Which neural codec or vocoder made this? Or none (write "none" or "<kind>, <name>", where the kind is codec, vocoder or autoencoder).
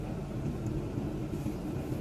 none